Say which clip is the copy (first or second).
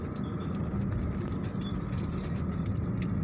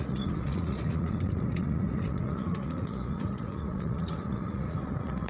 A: second